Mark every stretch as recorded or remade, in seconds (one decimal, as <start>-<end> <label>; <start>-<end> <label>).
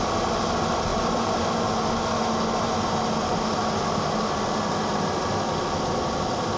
0.0-6.6 recorded